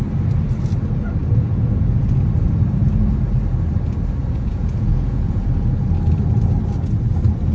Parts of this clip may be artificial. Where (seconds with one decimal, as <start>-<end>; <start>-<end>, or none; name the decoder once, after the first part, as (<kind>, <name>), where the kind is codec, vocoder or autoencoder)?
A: 1.2-2.0 (vocoder, Vocos); 4.2-5.5